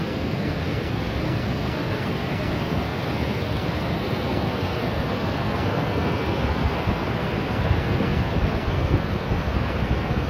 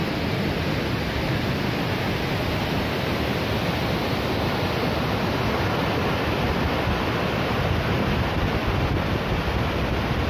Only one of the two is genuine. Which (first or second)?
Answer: second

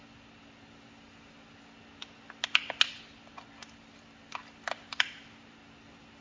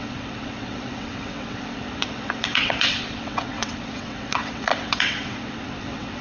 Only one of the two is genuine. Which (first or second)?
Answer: first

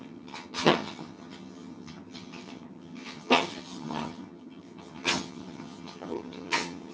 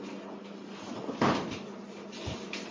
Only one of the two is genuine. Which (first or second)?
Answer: second